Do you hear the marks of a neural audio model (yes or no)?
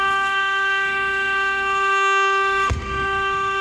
yes